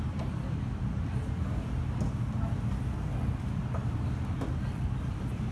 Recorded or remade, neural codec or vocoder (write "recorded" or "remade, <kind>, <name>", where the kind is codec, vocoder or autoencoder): recorded